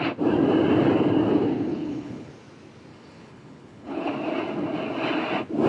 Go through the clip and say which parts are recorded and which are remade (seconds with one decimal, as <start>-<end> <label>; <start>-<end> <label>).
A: 0.0-1.7 recorded; 1.7-2.3 remade; 2.3-2.9 recorded; 2.9-4.1 remade; 4.1-5.7 recorded